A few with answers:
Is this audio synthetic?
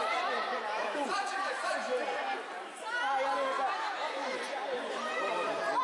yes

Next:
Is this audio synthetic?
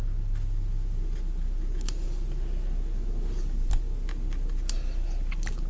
no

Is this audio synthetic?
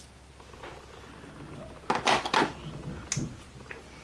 no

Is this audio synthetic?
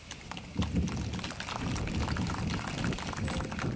no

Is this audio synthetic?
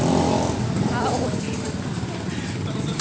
no